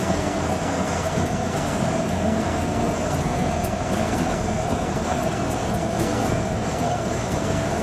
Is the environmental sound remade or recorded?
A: remade